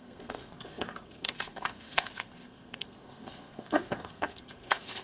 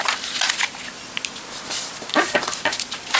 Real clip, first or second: second